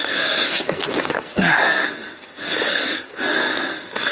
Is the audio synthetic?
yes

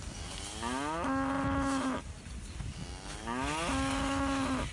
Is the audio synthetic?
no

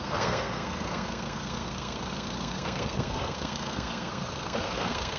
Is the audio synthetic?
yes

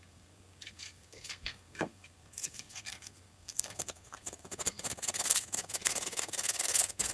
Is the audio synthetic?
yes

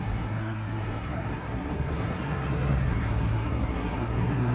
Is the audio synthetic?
yes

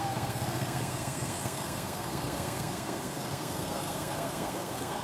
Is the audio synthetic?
yes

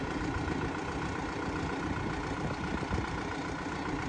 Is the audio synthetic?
no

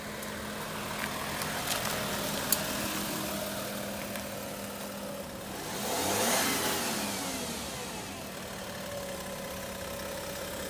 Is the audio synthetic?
no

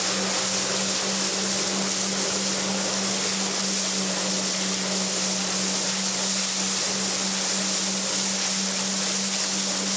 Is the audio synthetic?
no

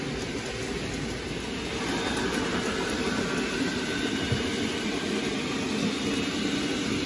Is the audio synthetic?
no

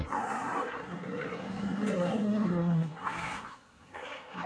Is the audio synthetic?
yes